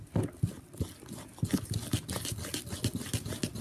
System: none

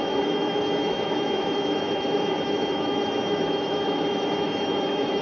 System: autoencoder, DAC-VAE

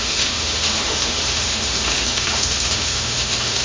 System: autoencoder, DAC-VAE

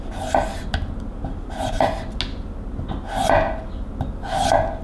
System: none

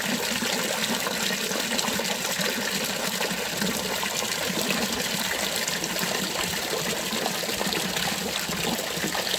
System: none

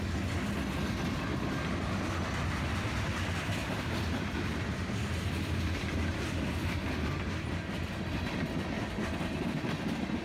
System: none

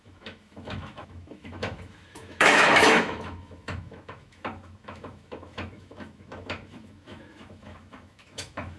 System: autoencoder, DAC-VAE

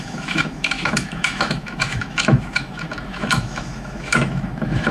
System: autoencoder, DAC-VAE